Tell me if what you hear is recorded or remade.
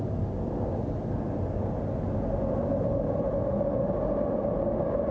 recorded